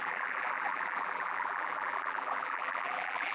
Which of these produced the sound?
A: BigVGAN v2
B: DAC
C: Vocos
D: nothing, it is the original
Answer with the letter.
A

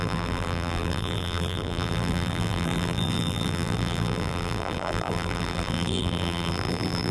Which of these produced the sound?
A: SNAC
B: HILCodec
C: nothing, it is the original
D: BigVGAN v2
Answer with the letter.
D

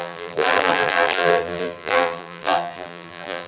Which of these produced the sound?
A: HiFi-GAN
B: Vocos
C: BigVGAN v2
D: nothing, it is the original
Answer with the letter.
C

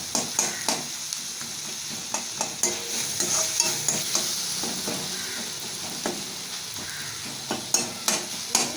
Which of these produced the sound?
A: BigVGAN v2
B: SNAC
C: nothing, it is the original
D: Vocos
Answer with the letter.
C